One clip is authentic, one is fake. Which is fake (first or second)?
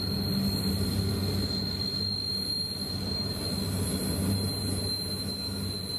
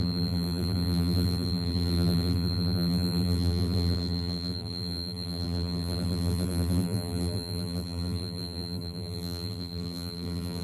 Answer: second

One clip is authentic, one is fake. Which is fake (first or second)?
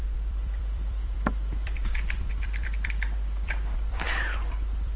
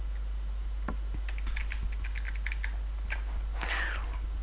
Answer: first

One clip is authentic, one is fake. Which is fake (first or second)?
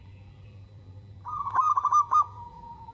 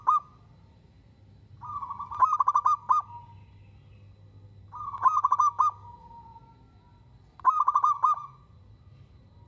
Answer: first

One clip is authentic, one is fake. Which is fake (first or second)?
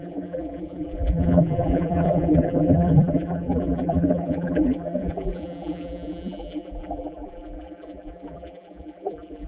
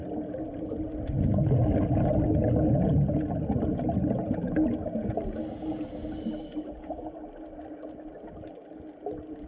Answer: first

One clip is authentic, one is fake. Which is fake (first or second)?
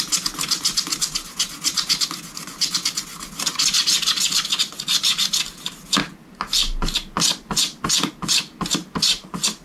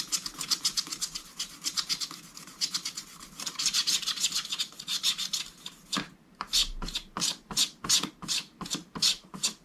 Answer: second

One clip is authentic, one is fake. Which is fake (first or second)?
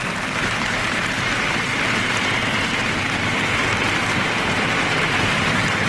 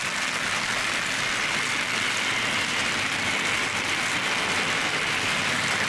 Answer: first